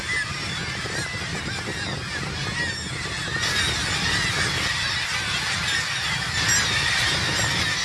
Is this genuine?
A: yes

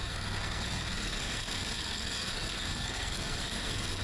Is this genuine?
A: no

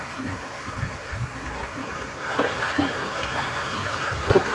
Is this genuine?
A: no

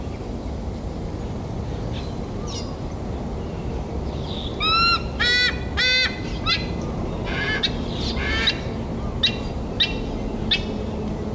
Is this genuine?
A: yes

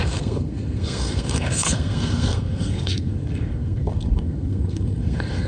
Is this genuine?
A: no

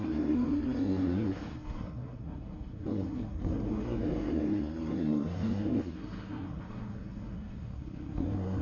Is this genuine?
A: no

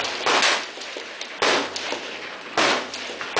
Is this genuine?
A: yes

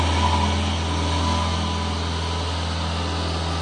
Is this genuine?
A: yes